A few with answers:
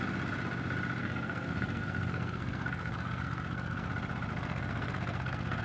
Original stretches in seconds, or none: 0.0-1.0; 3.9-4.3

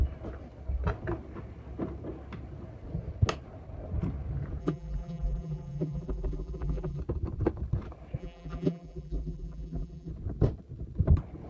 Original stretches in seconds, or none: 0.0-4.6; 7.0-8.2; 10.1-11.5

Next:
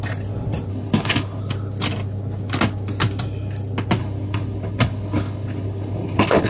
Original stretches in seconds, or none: 0.0-0.7; 1.4-4.0

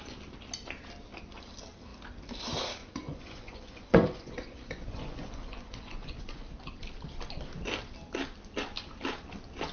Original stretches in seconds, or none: 0.0-2.8; 6.6-9.7

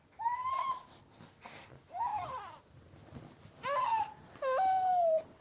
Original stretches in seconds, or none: 0.0-2.1; 2.6-5.4

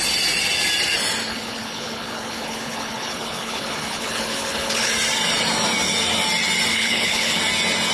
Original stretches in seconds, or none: 0.0-1.3; 4.9-6.7; 7.4-7.9

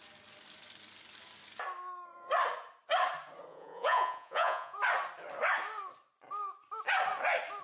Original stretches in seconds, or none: 0.0-3.5; 4.8-7.6

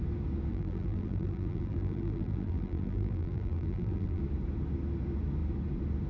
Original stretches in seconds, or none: 0.0-0.5; 4.2-6.1